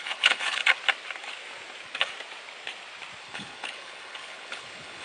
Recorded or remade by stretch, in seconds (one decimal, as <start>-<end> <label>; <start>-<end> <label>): 0.0-0.6 remade; 0.6-3.2 recorded; 3.2-5.0 remade